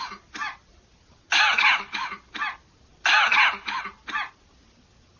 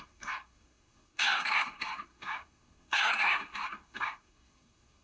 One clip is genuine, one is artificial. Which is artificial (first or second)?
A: second